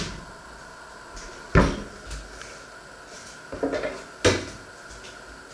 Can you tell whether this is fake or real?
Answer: real